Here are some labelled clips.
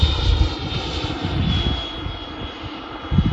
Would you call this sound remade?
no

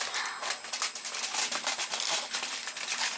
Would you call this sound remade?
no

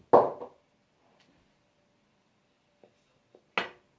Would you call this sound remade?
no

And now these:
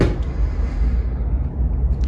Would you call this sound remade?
no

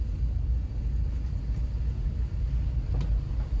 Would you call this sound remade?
no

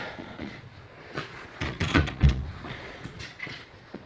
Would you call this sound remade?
yes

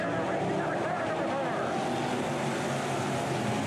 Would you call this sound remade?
no